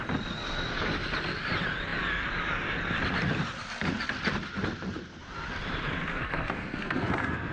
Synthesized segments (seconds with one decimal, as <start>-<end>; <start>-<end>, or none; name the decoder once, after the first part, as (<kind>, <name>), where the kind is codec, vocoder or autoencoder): 6.1-7.5 (codec, SNAC)